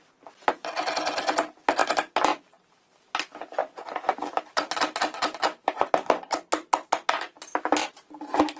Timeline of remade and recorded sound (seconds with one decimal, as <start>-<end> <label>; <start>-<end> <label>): 0.0-8.6 recorded